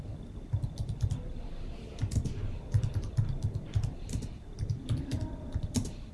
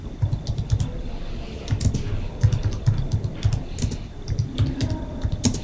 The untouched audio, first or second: second